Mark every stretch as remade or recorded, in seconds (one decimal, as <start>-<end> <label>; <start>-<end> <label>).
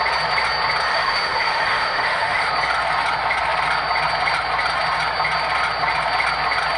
0.0-0.9 recorded; 0.9-2.5 remade; 2.5-6.8 recorded